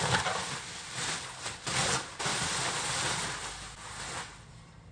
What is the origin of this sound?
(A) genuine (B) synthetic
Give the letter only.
A